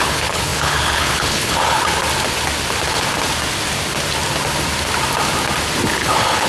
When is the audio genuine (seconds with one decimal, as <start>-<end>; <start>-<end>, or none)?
2.0-5.9